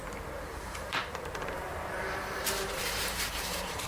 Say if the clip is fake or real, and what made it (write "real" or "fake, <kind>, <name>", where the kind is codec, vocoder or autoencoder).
fake, vocoder, BigVGAN v2